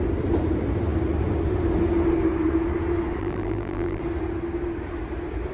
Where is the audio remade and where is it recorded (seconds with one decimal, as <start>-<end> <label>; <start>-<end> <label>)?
0.0-3.2 recorded; 3.2-4.0 remade; 4.0-5.5 recorded